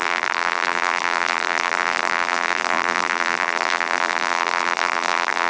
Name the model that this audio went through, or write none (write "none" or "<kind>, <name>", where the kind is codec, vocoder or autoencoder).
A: vocoder, BigVGAN v2